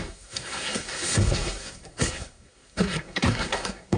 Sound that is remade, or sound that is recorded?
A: remade